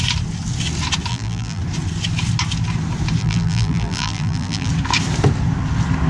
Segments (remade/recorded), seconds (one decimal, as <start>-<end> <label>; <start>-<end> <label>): 0.0-1.1 recorded; 1.1-1.6 remade; 1.6-3.2 recorded; 3.2-4.7 remade; 4.7-6.1 recorded